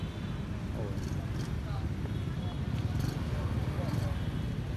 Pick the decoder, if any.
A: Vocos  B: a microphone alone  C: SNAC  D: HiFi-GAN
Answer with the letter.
B